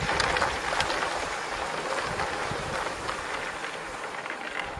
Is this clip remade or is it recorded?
recorded